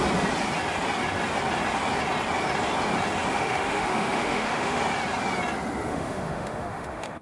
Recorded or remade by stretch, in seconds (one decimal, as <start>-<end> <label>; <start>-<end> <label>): 0.0-3.3 recorded; 3.3-4.8 remade; 4.8-5.9 recorded; 5.9-7.2 remade